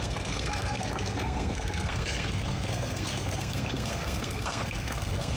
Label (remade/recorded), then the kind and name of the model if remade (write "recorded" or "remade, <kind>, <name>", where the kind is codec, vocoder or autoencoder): remade, codec, SNAC